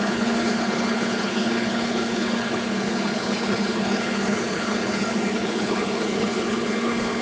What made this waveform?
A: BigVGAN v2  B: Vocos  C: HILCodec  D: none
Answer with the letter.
C